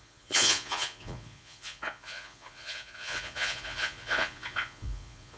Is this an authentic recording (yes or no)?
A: no